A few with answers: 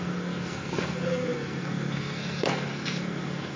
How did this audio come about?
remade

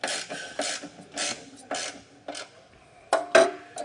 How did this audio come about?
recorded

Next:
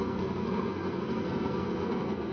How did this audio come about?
remade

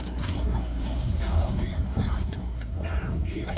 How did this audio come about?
remade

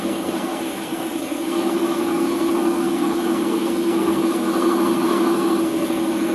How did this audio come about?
remade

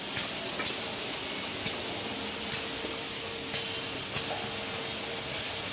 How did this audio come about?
recorded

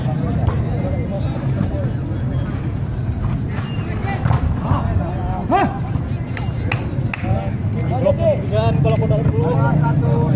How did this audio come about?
recorded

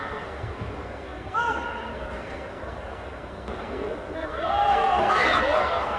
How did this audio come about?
remade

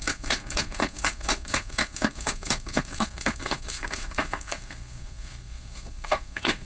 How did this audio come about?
remade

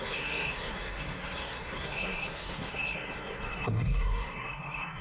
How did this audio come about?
remade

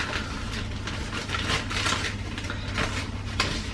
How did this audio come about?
recorded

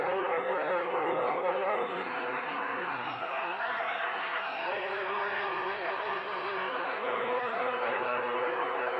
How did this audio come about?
remade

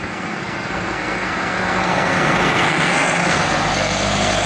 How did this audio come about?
remade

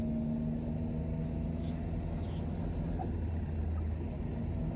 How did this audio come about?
recorded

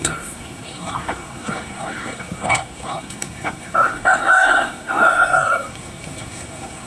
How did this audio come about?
remade